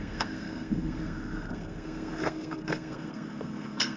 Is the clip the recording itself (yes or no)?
no